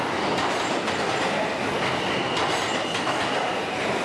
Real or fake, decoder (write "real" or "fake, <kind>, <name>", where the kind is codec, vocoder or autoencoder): real